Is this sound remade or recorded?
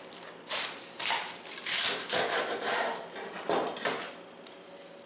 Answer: recorded